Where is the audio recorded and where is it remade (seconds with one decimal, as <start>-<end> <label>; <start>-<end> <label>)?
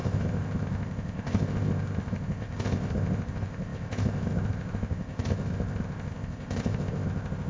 0.0-7.5 remade